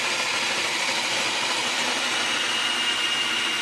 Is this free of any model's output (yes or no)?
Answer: no